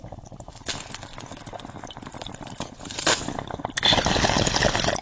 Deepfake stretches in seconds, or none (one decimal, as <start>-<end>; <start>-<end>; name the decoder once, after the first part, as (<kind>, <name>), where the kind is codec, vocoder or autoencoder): 0.0-5.0 (vocoder, BigVGAN v2)